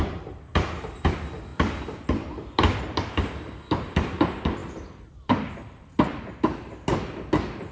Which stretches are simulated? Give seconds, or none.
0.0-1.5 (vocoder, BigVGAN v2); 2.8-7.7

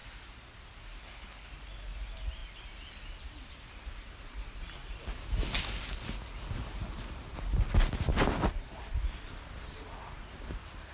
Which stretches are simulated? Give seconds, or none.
1.0-1.5 (codec, HILCodec)

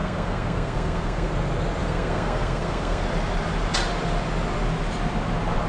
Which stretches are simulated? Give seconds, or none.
0.0-1.3 (codec, SNAC); 1.8-3.0

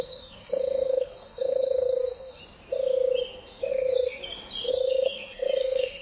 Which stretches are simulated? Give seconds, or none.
0.0-2.4 (codec, SNAC); 3.7-4.2; 4.7-6.0

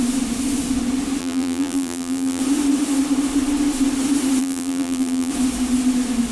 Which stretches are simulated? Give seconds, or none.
1.2-2.4 (vocoder, BigVGAN v2); 4.4-5.3

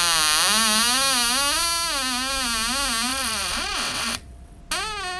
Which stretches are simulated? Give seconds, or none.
3.1-4.6 (vocoder, WaveNeXt)